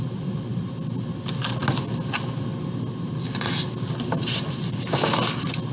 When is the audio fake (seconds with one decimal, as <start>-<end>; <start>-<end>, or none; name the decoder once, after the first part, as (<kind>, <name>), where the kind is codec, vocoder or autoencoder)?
none